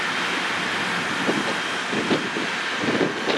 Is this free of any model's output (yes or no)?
yes